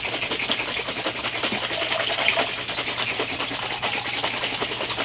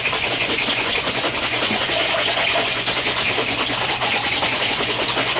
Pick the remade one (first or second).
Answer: second